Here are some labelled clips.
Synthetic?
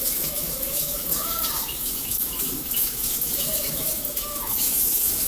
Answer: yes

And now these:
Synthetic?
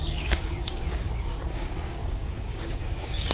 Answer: yes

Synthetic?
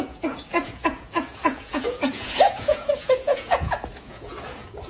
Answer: yes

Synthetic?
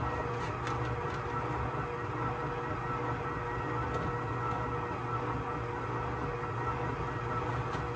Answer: no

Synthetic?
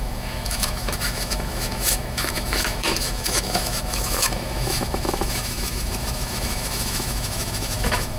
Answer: yes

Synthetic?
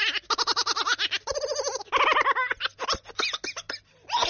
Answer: no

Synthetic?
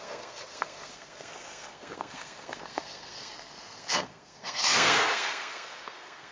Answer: yes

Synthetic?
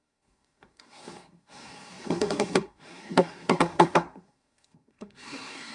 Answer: yes